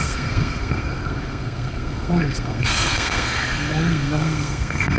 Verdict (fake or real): fake